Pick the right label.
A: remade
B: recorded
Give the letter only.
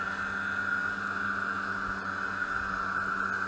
B